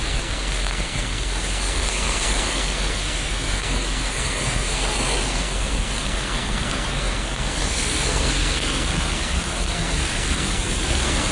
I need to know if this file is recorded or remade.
remade